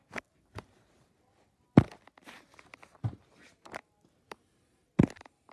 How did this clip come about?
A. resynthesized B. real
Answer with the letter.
B